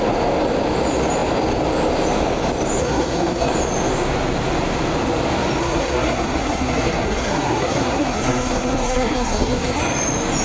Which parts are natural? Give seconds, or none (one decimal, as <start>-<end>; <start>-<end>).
0.0-2.8; 3.5-5.6; 9.8-10.4